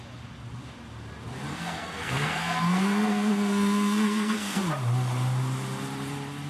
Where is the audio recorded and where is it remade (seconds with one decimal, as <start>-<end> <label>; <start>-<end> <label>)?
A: 0.0-1.5 recorded; 1.5-4.6 remade; 4.6-6.5 recorded